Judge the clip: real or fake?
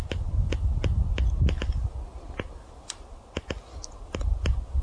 real